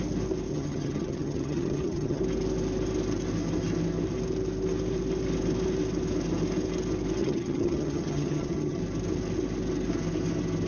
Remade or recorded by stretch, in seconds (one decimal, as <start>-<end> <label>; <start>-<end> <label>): 0.0-0.5 recorded; 0.5-2.2 remade; 2.2-7.2 recorded; 7.2-8.8 remade; 8.8-10.7 recorded